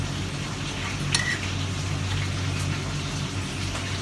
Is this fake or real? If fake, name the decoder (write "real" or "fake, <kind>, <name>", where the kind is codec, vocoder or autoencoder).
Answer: real